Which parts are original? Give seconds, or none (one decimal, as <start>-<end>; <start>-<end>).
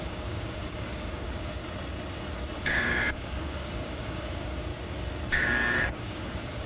1.6-2.6; 4.7-5.3